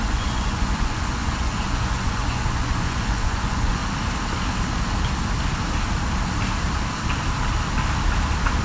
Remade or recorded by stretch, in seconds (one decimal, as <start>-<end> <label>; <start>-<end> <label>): 0.0-3.8 remade; 3.8-8.6 recorded

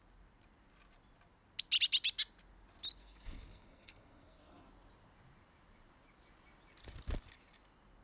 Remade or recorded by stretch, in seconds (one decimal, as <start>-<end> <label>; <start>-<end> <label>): 0.0-3.0 recorded; 3.0-4.7 remade; 4.7-8.0 recorded

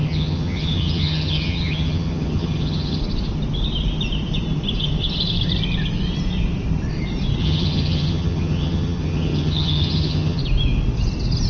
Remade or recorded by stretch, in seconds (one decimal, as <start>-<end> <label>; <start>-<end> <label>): 0.0-3.0 remade; 3.0-7.4 recorded; 7.4-10.4 remade; 10.4-11.5 recorded

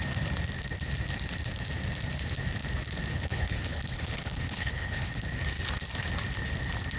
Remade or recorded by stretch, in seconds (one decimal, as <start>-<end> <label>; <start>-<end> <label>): 0.0-3.1 recorded; 3.1-5.2 remade; 5.2-7.0 recorded

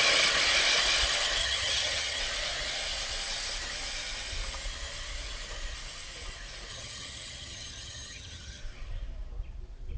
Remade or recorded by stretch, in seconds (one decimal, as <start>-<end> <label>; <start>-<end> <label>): 0.0-1.4 recorded; 1.4-2.2 remade; 2.2-6.7 recorded; 6.7-8.6 remade; 8.6-10.0 recorded

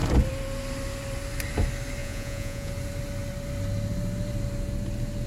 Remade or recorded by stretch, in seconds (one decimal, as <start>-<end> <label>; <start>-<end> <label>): 0.0-2.0 recorded; 2.0-2.7 remade; 2.7-5.3 recorded